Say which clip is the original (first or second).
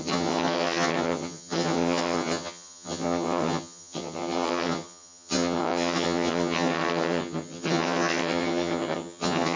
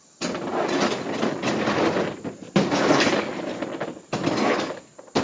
second